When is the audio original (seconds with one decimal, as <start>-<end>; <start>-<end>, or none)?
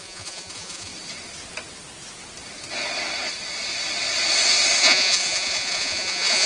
0.9-4.8